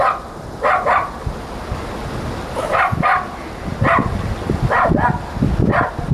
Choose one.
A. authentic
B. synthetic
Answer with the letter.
A